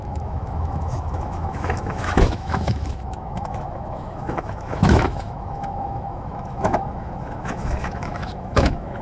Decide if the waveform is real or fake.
fake